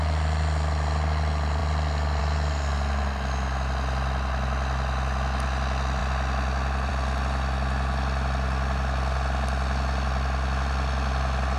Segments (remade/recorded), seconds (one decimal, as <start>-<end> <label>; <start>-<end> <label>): 0.0-11.6 recorded